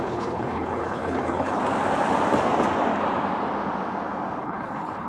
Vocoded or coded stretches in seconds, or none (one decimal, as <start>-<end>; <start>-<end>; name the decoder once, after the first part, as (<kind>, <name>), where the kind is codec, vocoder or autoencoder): 0.0-1.6 (codec, HILCodec); 4.4-5.1